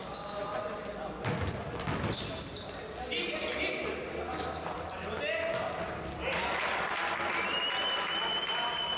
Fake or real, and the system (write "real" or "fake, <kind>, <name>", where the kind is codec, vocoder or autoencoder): real